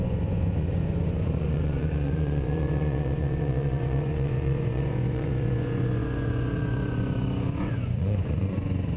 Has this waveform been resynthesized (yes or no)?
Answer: yes